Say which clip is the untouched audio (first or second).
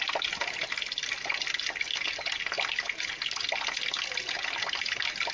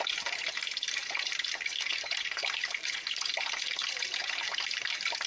first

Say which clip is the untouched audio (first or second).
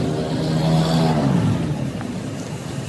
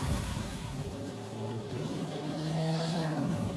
first